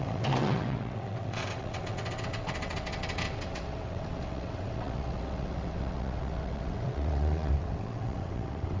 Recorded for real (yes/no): no